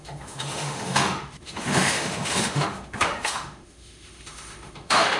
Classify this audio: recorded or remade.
remade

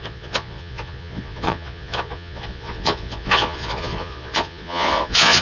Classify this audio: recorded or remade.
remade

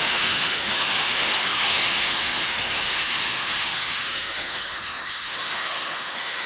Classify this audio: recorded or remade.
remade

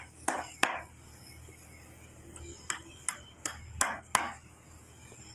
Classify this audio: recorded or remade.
remade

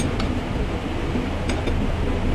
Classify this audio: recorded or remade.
recorded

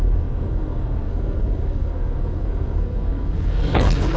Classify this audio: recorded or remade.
remade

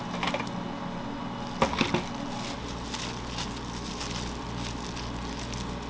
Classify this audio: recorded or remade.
recorded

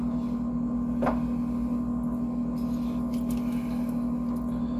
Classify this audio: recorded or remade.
recorded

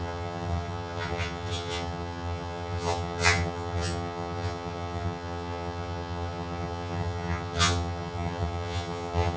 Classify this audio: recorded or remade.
remade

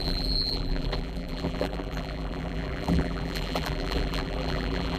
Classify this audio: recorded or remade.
remade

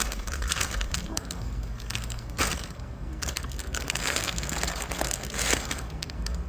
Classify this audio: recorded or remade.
remade